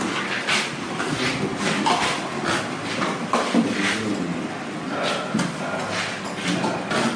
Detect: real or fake real